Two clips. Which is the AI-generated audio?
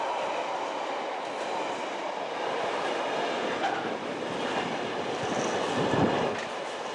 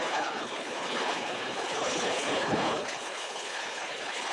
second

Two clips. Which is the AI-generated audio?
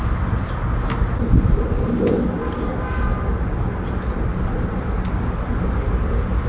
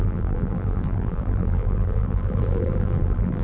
second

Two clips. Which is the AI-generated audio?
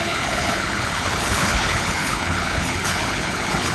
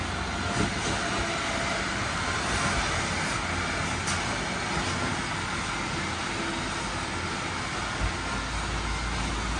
first